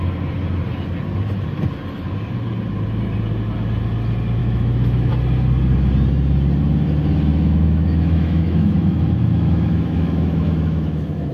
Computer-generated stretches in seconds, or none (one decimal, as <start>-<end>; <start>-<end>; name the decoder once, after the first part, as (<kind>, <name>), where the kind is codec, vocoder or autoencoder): 4.4-5.1 (autoencoder, DAC-VAE); 7.3-11.3

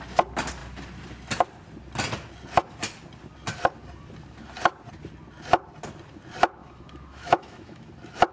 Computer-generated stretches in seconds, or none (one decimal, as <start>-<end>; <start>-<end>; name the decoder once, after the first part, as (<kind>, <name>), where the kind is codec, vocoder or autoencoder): 6.6-7.9 (autoencoder, DAC-VAE)

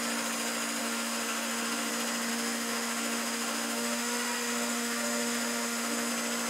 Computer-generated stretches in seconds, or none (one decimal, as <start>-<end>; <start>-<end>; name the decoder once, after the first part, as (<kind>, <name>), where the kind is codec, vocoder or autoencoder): 0.8-1.9 (autoencoder, DAC-VAE); 2.3-6.1

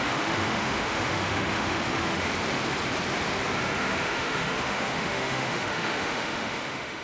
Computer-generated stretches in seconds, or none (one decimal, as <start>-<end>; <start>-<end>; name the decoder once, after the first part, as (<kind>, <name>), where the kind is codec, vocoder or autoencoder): 0.0-2.3 (autoencoder, DAC-VAE); 3.8-7.0

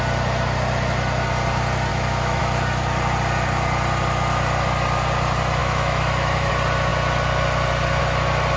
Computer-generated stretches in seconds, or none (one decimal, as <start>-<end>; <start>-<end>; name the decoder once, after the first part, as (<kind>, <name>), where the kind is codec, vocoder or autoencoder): 1.9-2.4 (autoencoder, DAC-VAE); 5.6-6.5